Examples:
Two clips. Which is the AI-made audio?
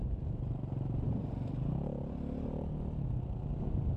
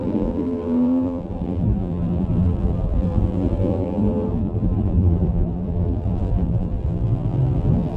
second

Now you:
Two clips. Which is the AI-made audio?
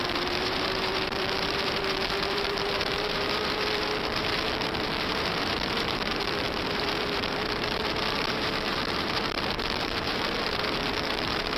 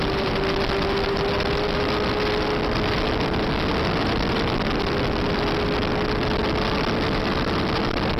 first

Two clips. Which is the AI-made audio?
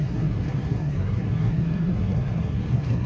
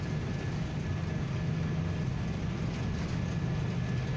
first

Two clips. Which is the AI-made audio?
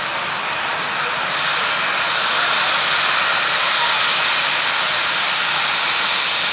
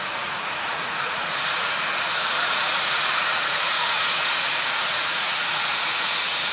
second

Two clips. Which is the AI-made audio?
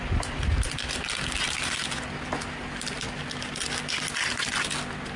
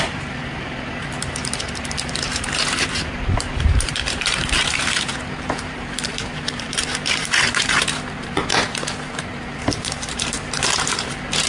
second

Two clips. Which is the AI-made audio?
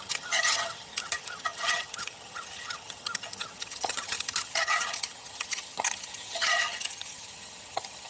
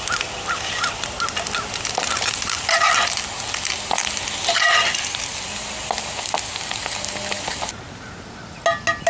first